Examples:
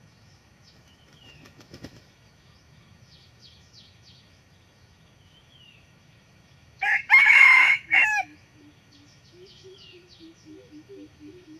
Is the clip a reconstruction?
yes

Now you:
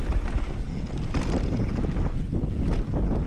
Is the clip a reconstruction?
no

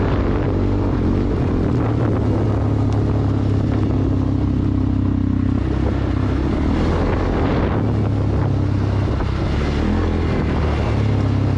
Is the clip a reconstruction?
no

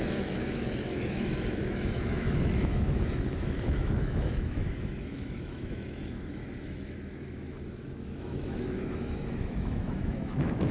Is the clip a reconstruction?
yes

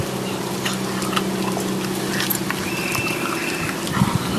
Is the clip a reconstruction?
no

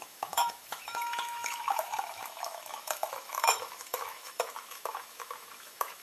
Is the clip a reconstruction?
yes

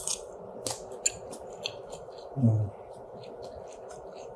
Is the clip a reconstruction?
no